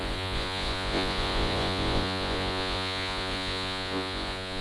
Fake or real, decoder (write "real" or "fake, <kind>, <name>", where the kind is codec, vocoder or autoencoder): fake, vocoder, Vocos